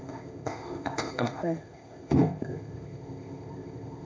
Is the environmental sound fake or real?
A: fake